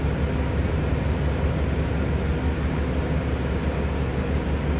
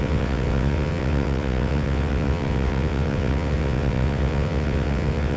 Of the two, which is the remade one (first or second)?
second